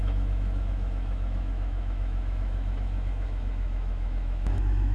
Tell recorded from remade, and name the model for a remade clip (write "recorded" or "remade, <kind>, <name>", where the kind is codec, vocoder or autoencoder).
remade, autoencoder, DAC-VAE